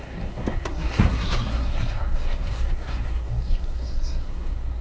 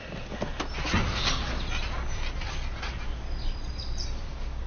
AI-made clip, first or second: first